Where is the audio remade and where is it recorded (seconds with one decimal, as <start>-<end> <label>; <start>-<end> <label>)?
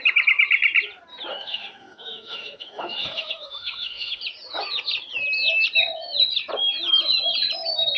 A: 0.0-1.3 recorded; 1.3-4.2 remade; 4.2-8.0 recorded